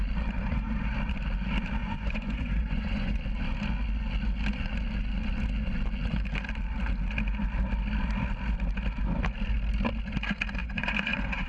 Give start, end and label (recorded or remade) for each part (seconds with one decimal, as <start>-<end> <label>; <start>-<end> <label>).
0.0-1.8 recorded; 1.8-3.2 remade; 3.2-10.6 recorded; 10.6-11.5 remade